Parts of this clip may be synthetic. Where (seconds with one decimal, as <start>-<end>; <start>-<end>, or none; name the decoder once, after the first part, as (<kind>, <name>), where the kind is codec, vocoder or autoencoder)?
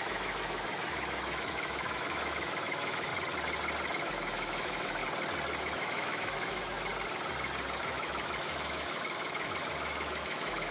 0.0-3.1 (autoencoder, DAC-VAE); 4.0-5.0; 5.6-6.9; 7.8-10.7